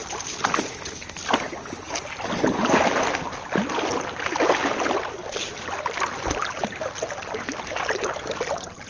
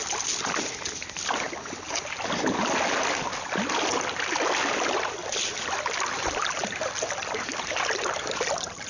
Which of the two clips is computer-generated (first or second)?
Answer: second